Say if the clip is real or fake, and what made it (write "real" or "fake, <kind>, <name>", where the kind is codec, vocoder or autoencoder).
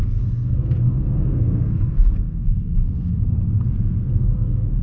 fake, codec, SNAC